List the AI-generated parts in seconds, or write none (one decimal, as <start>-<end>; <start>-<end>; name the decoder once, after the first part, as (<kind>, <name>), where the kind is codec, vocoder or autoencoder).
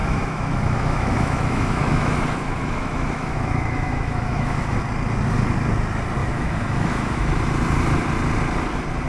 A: 0.0-4.8 (autoencoder, DAC-VAE); 6.2-7.3